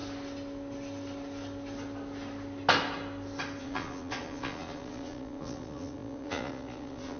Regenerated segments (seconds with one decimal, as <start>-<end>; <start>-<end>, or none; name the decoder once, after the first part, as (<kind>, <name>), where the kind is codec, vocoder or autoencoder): 3.6-7.2 (vocoder, Vocos)